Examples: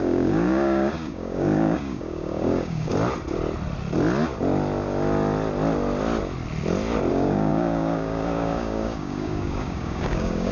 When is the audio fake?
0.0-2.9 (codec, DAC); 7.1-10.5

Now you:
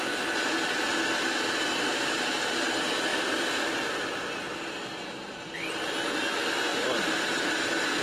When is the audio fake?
3.1-5.7 (vocoder, BigVGAN v2); 6.7-7.3

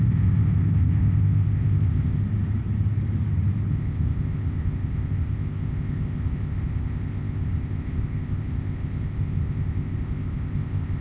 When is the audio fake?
0.0-2.2 (codec, ZipCodec); 3.7-11.0

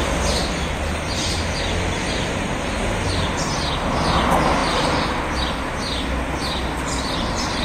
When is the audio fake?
none

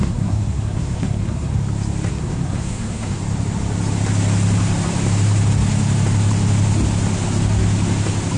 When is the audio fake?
0.0-1.5 (codec, SNAC); 2.1-3.2